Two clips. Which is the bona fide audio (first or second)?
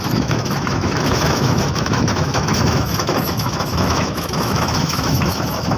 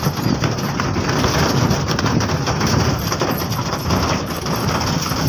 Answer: second